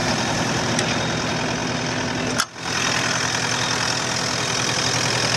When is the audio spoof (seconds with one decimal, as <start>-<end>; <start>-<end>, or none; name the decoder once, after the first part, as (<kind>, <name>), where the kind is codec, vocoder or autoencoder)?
0.0-0.7 (vocoder, BigVGAN v2)